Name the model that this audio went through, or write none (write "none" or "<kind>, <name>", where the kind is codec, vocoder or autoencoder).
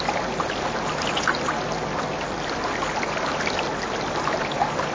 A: none